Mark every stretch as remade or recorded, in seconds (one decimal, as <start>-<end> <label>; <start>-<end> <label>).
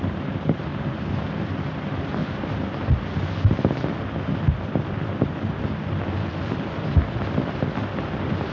0.0-0.7 remade; 0.7-1.4 recorded; 1.4-2.2 remade; 2.2-5.2 recorded; 5.2-8.5 remade